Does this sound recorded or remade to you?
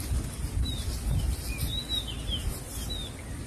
recorded